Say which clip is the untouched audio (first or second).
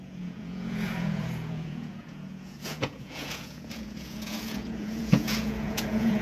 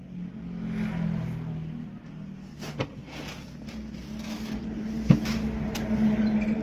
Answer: second